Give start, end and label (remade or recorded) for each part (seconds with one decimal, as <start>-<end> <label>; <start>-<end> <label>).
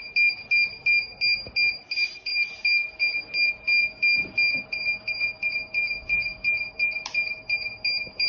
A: 0.0-8.3 recorded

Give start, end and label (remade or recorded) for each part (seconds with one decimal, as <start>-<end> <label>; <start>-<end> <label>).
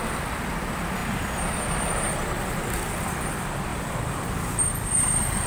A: 0.0-1.0 recorded; 1.0-3.3 remade; 3.3-3.7 recorded; 3.7-5.5 remade